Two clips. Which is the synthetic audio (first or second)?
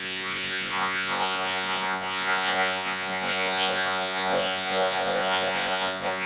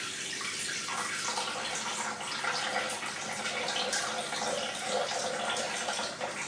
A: first